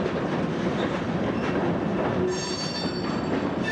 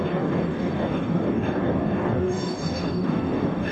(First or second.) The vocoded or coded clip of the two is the second